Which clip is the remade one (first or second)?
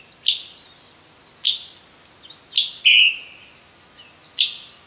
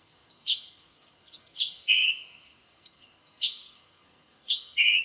second